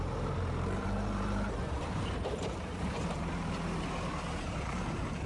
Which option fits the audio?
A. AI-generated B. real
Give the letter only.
A